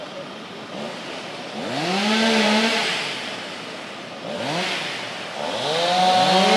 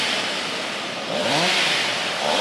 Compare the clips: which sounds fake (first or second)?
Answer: second